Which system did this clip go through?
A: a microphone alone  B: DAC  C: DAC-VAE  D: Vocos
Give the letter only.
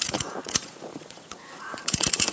D